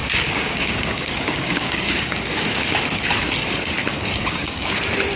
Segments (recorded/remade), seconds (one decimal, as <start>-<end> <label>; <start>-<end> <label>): 0.0-2.8 remade; 2.8-3.9 recorded; 3.9-4.8 remade; 4.8-5.2 recorded